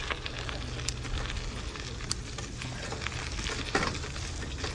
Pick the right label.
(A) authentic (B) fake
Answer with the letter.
A